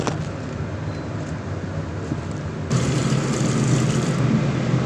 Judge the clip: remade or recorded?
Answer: recorded